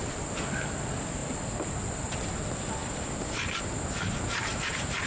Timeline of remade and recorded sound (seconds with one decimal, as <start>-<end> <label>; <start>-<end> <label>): 0.0-4.5 recorded; 4.5-5.1 remade